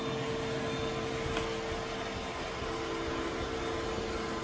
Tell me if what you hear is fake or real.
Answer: real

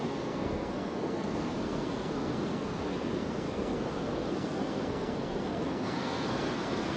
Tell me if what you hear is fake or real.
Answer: fake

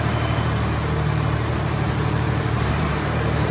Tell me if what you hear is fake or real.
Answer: fake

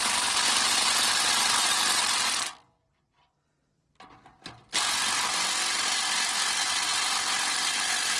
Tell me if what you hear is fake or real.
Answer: real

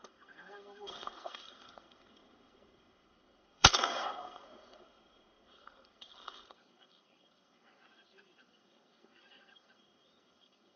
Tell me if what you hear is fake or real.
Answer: fake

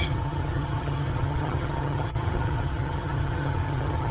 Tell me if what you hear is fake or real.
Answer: fake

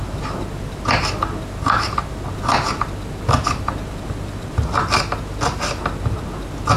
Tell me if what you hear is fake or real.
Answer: real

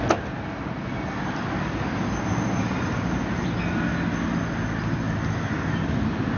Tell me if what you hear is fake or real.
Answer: real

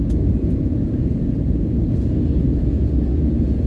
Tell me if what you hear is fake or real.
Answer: fake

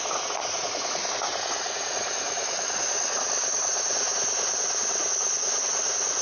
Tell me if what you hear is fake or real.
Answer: fake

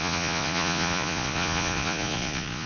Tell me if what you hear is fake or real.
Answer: fake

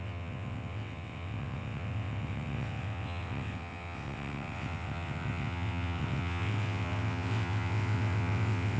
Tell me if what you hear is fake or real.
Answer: fake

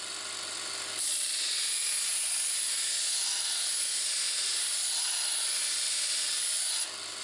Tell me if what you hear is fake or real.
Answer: real